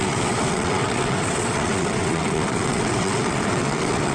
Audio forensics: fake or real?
fake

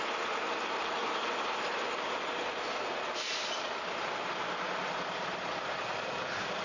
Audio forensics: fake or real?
real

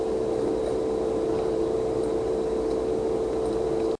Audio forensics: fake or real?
real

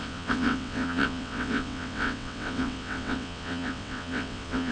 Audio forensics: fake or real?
fake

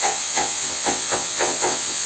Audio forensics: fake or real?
fake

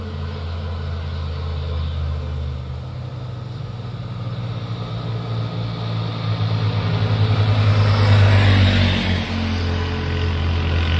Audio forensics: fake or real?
real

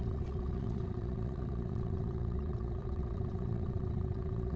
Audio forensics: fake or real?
fake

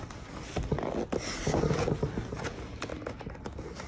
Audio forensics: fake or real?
real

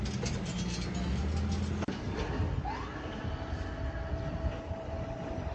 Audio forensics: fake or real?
real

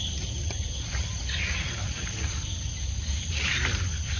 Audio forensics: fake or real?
real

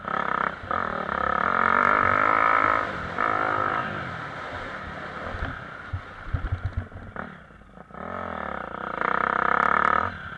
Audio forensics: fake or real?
real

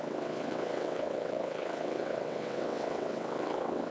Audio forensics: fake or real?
fake